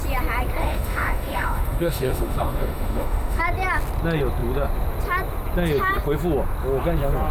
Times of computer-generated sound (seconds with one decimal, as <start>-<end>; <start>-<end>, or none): 0.6-3.4